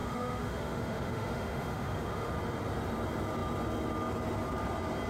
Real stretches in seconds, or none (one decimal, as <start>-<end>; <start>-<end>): 2.3-5.1